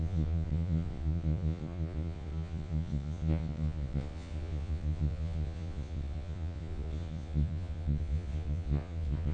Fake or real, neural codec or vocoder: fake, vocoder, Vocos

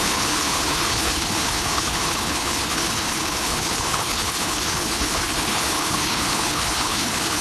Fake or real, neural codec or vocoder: fake, codec, HILCodec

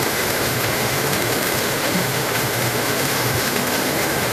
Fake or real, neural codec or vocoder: fake, autoencoder, DAC-VAE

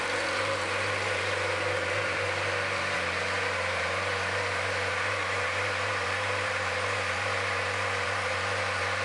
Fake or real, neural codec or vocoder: fake, vocoder, BigVGAN v2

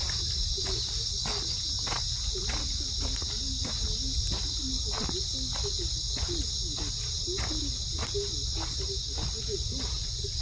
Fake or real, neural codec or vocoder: real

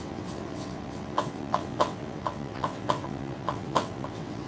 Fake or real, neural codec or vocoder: fake, vocoder, WaveNeXt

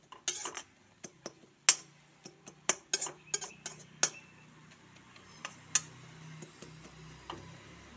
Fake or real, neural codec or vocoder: real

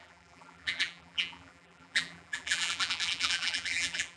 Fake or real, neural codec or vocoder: fake, vocoder, BigVGAN v2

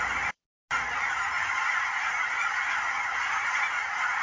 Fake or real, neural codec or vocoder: real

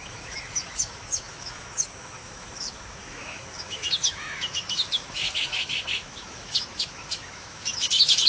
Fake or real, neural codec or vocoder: fake, autoencoder, DAC-VAE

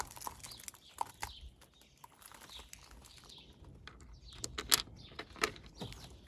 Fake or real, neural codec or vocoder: real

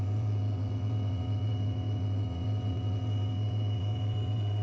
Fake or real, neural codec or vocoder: fake, vocoder, WaveNeXt